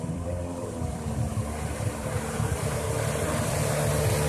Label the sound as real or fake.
fake